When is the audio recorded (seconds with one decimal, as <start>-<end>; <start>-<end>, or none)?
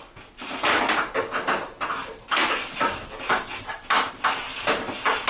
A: 0.0-2.4; 4.1-5.3